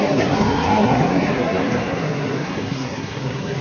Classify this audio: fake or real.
fake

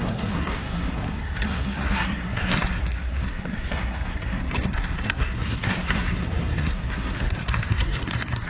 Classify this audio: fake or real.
fake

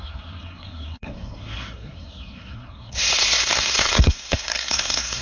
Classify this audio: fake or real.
fake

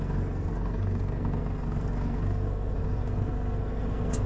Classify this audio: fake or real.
fake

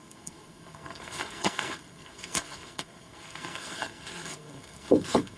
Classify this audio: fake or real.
fake